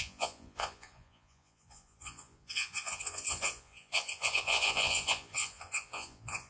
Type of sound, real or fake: fake